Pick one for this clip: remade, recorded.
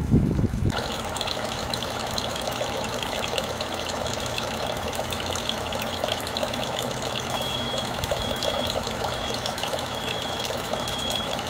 remade